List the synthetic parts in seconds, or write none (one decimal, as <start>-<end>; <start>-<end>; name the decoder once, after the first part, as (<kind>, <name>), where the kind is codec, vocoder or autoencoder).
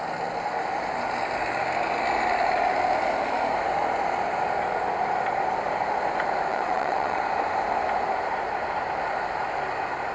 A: 6.5-7.2 (vocoder, WaveNeXt)